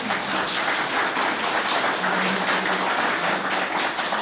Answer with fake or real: real